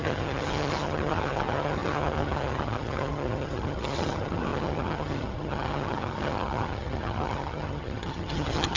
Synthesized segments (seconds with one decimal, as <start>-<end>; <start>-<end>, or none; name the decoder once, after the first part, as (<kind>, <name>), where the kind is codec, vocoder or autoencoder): 0.0-8.8 (vocoder, HiFi-GAN)